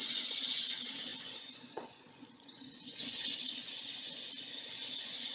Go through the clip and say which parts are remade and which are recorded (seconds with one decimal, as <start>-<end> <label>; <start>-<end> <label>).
0.0-5.3 remade